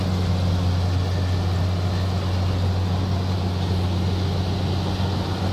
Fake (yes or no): no